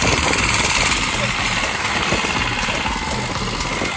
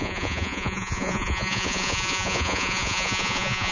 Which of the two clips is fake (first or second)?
second